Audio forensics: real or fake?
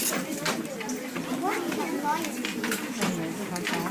real